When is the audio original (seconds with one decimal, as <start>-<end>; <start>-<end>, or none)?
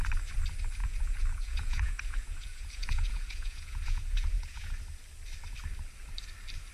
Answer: 0.0-0.8; 4.8-6.7